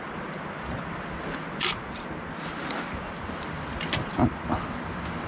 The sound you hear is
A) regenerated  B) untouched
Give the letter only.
B